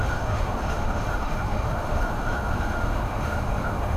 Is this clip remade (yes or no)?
yes